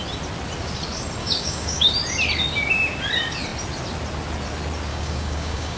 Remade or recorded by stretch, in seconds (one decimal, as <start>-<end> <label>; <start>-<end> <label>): 0.0-1.2 recorded; 1.2-1.9 remade; 1.9-4.9 recorded; 4.9-5.8 remade